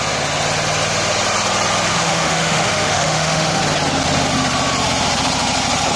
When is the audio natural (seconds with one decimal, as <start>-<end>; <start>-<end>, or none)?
0.0-1.9; 3.6-6.0

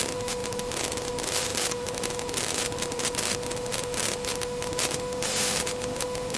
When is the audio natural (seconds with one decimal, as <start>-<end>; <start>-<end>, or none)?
none

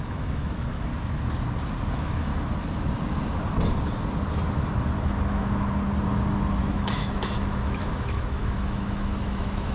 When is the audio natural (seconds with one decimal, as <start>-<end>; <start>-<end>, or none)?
0.9-1.9; 2.3-6.6